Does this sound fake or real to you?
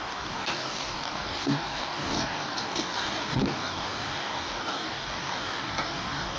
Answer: fake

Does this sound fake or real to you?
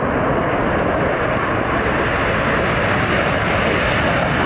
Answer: real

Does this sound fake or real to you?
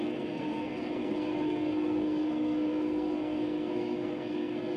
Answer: fake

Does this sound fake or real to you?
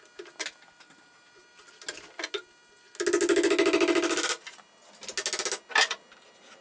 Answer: real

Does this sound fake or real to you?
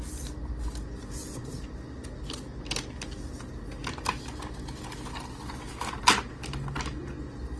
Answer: real